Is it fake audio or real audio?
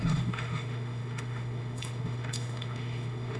fake